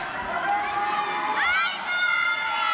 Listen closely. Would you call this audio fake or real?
real